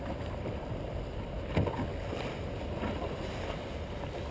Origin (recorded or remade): remade